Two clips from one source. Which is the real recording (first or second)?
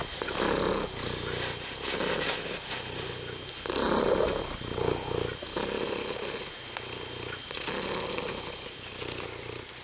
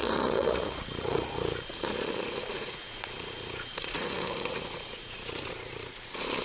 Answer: first